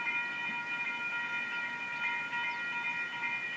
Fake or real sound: real